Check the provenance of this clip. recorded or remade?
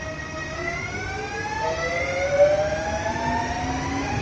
recorded